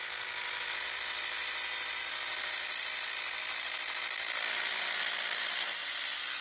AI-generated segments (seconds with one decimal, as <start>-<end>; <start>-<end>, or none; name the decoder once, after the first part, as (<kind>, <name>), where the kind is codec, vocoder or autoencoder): 0.0-1.2 (vocoder, BigVGAN v2); 2.0-4.8